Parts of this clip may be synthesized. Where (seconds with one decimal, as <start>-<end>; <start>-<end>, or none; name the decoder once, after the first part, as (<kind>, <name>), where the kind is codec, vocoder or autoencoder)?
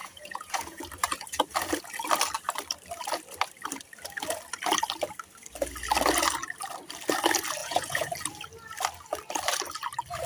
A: 0.0-0.8 (vocoder, Vocos); 7.6-8.1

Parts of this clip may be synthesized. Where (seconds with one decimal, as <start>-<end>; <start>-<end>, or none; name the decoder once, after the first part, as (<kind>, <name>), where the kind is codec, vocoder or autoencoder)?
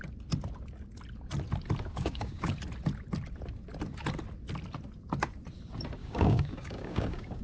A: 1.9-2.5 (codec, DAC); 6.0-7.4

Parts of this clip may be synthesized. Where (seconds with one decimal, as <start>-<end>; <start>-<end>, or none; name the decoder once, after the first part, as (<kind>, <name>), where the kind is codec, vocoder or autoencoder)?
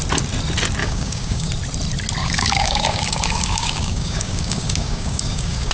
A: 0.8-1.5 (codec, DAC); 2.2-5.7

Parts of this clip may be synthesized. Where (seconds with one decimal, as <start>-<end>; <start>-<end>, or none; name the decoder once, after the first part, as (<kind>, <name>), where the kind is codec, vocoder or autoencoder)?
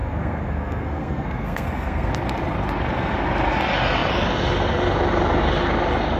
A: 0.0-2.1 (codec, SNAC)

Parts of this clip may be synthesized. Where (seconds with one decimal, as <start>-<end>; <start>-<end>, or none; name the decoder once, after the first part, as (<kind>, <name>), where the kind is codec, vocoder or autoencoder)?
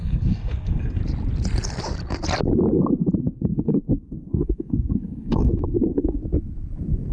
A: 0.0-1.0 (codec, SNAC); 3.2-6.2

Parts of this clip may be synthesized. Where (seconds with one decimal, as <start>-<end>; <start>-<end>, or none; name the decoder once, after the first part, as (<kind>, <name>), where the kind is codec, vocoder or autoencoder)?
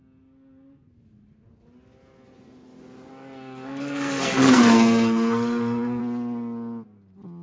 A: 3.1-6.0 (codec, SNAC)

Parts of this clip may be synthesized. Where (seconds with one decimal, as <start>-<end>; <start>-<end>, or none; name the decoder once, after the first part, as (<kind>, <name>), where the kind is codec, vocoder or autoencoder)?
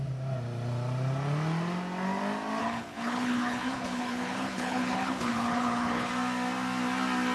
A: 2.6-6.1 (codec, HILCodec)